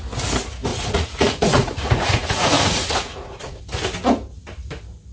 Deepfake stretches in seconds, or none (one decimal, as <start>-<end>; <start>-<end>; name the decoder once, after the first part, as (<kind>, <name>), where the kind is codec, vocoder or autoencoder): 0.7-3.6 (vocoder, Vocos)